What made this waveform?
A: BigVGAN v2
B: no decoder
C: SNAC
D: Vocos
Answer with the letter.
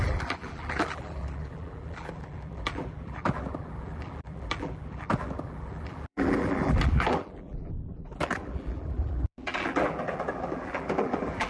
A